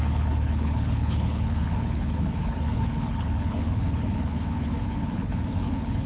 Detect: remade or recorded remade